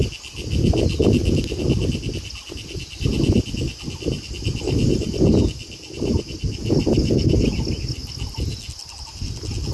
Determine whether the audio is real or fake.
real